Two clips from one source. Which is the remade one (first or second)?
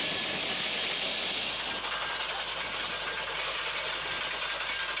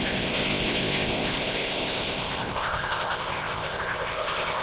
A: second